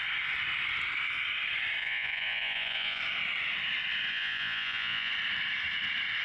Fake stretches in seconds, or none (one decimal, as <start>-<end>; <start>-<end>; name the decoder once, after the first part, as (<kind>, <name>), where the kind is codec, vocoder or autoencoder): 1.8-3.0 (vocoder, Vocos); 4.1-5.1